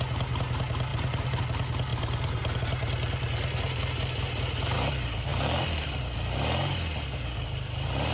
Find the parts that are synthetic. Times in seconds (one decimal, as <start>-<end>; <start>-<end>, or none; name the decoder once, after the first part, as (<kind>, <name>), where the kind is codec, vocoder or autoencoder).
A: 0.9-1.4 (vocoder, BigVGAN v2); 1.9-2.6; 5.3-6.0